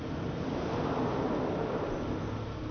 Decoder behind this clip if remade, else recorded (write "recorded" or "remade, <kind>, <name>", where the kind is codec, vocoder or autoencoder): recorded